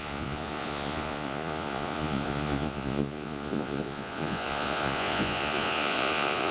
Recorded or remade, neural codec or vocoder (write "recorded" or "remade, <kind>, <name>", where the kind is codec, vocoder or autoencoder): remade, vocoder, Vocos